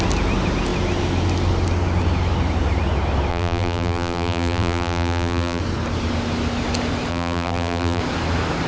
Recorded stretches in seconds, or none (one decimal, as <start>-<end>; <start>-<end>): 0.0-3.3; 5.6-7.1; 8.0-8.7

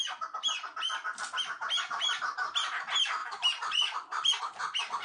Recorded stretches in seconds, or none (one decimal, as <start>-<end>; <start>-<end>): 0.0-3.2; 4.4-5.0

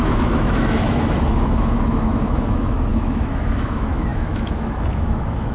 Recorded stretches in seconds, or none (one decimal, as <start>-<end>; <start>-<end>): none

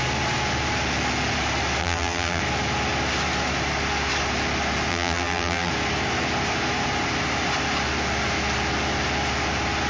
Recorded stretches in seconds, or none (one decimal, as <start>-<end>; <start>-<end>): 0.0-1.8; 2.4-4.9; 5.7-9.9